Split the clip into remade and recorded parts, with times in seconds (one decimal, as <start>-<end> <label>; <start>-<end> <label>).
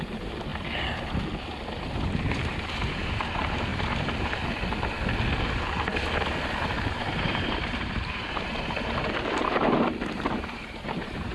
0.0-0.5 remade; 0.5-1.7 recorded; 1.7-3.7 remade; 3.7-6.9 recorded; 6.9-11.3 remade